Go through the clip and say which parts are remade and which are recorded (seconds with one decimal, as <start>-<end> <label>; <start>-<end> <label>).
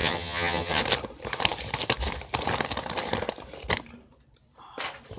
0.0-0.8 remade; 0.8-5.2 recorded